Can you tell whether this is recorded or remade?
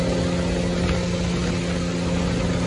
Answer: recorded